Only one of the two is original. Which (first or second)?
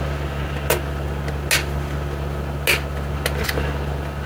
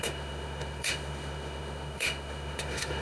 first